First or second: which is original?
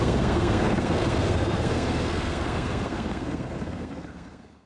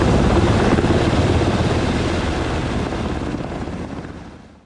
second